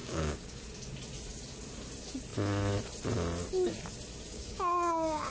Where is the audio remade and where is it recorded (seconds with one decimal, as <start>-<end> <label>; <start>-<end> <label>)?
0.0-0.6 remade; 0.6-4.3 recorded; 4.3-5.3 remade